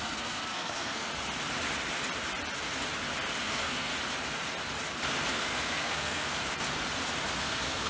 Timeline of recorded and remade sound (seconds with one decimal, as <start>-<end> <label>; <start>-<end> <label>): 0.0-1.1 remade; 1.1-3.4 recorded; 3.4-3.9 remade; 3.9-5.3 recorded; 5.3-6.4 remade; 6.4-7.4 recorded; 7.4-7.9 remade